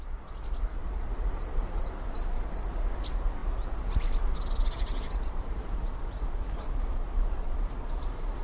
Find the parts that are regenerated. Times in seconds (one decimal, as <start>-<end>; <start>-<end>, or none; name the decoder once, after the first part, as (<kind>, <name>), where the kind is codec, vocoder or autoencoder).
none